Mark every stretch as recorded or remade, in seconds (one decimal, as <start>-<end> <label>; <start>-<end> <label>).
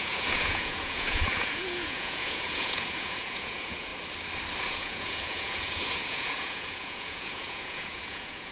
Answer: 0.0-3.9 remade; 3.9-4.7 recorded; 4.7-8.5 remade